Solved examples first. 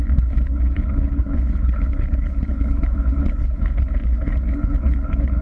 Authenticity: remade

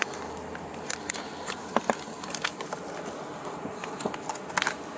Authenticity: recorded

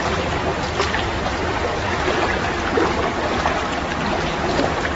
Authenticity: recorded